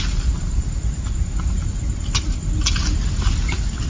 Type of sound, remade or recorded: recorded